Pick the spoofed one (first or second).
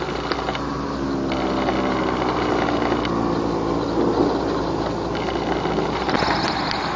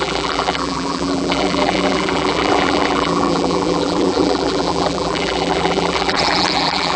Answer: second